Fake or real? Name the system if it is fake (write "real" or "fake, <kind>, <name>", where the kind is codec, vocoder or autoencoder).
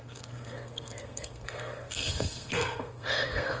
fake, codec, SNAC